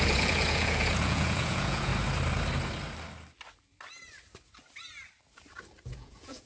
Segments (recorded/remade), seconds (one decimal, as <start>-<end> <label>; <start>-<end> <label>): 0.0-1.9 remade; 1.9-5.8 recorded; 5.8-6.5 remade